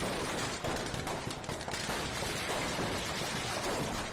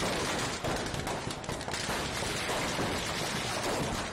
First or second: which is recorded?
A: second